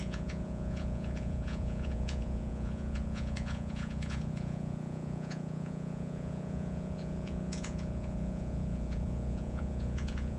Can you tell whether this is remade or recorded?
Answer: remade